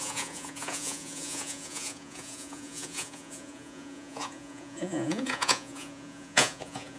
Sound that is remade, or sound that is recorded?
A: remade